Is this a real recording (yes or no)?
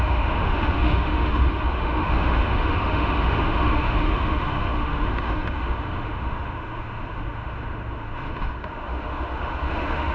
no